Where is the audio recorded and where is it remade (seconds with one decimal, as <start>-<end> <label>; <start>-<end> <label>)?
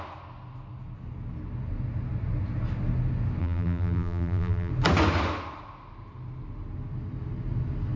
0.0-3.4 recorded; 3.4-4.7 remade; 4.7-8.0 recorded